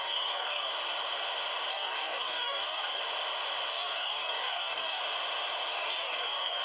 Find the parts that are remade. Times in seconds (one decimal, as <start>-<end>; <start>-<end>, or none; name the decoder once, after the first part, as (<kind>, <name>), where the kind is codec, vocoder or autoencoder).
0.0-0.7 (codec, DAC); 1.7-3.0; 3.7-5.0; 5.7-6.6